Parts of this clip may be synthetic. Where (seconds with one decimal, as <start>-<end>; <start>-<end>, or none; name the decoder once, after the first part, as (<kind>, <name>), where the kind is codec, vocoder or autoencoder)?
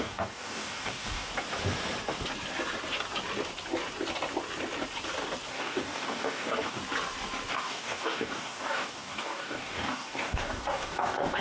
0.0-1.3 (codec, DAC); 5.5-6.8; 7.5-11.4